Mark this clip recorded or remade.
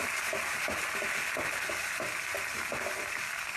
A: recorded